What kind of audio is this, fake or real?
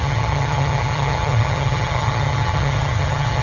fake